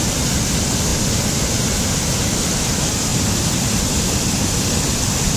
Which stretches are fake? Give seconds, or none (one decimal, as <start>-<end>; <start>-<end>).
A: 3.1-4.5